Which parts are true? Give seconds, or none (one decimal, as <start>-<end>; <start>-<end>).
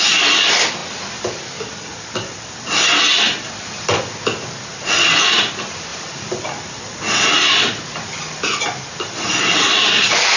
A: 0.0-10.4